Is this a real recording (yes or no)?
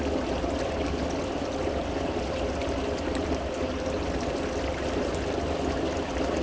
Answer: yes